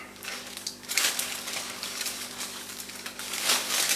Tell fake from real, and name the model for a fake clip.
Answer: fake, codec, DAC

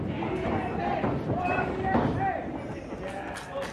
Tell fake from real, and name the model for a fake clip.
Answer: real